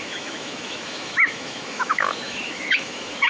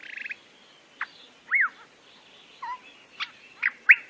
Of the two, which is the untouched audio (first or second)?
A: second